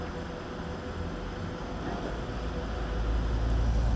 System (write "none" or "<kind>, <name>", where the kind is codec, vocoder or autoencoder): none